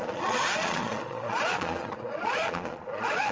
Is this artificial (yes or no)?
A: yes